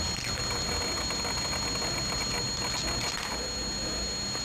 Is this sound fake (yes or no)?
no